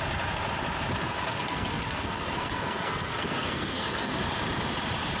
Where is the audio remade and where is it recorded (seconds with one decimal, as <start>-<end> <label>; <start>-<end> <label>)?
0.0-1.0 recorded; 1.0-4.1 remade; 4.1-5.2 recorded